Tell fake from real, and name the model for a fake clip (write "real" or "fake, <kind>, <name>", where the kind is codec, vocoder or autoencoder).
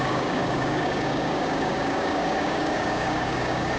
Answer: fake, codec, DAC